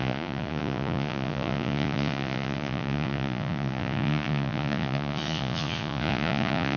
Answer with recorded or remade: remade